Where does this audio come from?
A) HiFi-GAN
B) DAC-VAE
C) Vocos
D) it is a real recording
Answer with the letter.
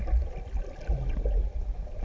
D